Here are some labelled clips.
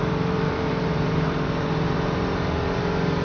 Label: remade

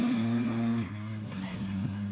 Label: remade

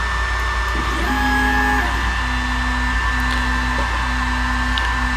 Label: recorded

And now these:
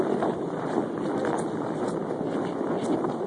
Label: recorded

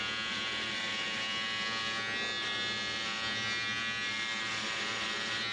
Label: recorded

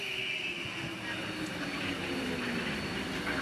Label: recorded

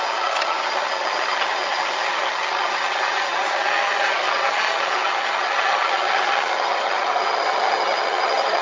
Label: remade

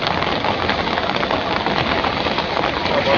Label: recorded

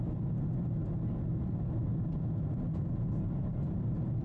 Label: recorded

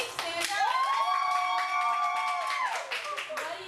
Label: recorded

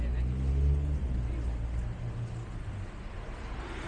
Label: recorded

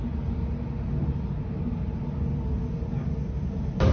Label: recorded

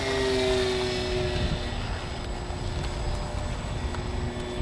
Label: recorded